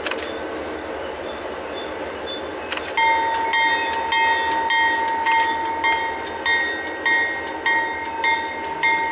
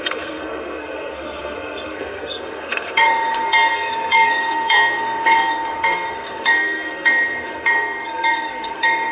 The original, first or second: first